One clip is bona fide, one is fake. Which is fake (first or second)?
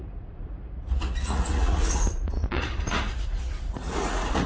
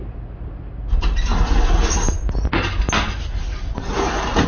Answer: first